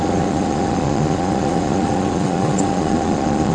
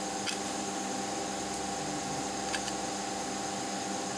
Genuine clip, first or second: second